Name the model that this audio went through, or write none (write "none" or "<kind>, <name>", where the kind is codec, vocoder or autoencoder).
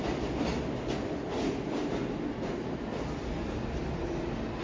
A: none